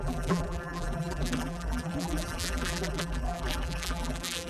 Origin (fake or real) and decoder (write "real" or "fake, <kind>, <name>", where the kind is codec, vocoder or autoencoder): fake, vocoder, BigVGAN v2